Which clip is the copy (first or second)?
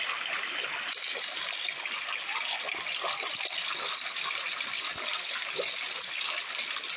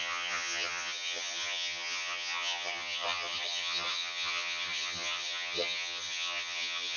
second